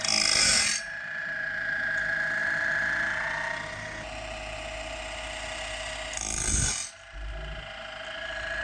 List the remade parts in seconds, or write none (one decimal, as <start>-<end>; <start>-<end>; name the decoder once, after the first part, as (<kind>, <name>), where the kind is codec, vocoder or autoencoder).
none